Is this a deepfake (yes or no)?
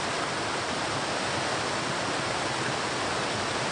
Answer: no